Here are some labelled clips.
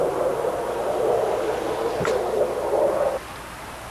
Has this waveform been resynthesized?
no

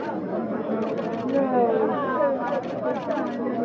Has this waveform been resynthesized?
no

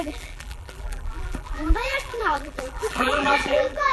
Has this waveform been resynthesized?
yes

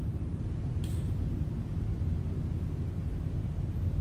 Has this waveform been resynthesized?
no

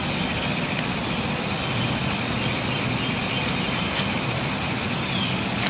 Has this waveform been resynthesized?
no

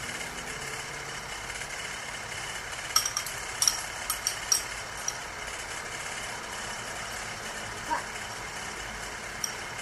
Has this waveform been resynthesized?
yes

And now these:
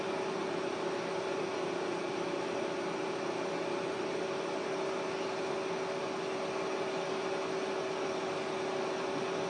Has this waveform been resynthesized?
no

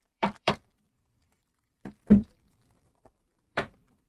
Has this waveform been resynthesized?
yes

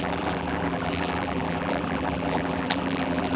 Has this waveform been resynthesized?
yes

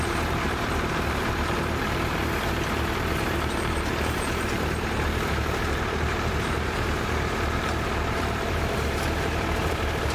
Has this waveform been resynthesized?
yes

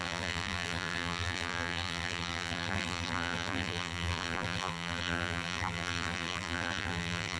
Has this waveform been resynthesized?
yes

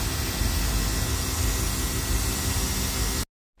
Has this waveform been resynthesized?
no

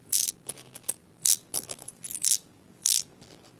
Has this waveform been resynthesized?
yes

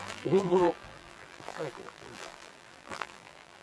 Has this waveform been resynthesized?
yes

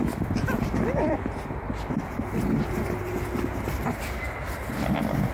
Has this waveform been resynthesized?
no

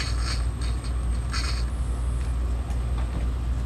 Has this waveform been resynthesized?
no